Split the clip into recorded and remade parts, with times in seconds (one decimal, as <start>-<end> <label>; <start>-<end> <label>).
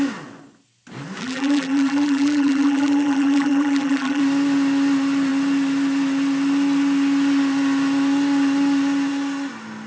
0.0-1.2 recorded; 1.2-4.2 remade; 4.2-9.9 recorded